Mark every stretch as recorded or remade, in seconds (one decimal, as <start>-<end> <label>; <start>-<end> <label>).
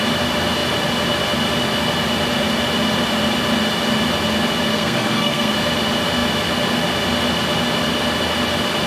0.0-4.7 recorded; 4.7-5.5 remade; 5.5-8.9 recorded